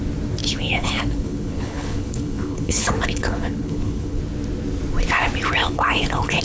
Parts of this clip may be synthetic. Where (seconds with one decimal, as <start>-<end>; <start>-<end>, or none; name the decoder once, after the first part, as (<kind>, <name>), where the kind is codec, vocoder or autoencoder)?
0.4-4.2 (codec, HILCodec); 5.6-6.4